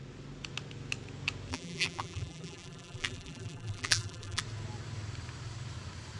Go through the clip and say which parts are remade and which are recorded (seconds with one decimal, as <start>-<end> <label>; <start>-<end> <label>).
0.0-1.5 recorded; 1.5-4.4 remade; 4.4-6.2 recorded

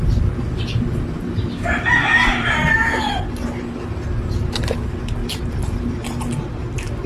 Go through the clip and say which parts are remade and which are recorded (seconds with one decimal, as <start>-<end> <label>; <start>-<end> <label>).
0.0-2.1 recorded; 2.1-3.2 remade; 3.2-7.1 recorded

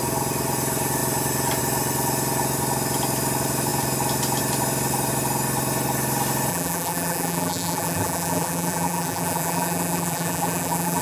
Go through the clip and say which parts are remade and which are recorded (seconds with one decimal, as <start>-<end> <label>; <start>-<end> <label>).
0.0-6.5 recorded; 6.5-11.0 remade

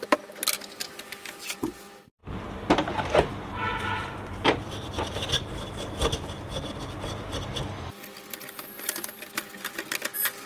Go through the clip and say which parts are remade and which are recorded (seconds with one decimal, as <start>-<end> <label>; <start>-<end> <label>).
0.0-2.2 recorded; 2.2-5.7 remade; 5.7-10.5 recorded

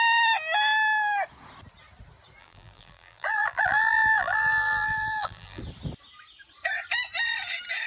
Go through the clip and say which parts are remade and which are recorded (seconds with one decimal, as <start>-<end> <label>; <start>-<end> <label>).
0.0-2.4 recorded; 2.4-5.6 remade; 5.6-7.9 recorded